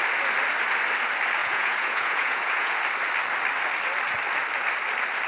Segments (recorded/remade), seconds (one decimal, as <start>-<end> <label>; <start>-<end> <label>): 0.0-1.4 recorded; 1.4-2.7 remade; 2.7-5.3 recorded